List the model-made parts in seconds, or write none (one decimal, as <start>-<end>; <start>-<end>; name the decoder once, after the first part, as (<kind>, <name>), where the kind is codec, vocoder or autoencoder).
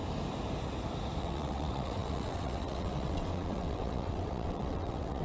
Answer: 1.2-5.2 (vocoder, WaveNeXt)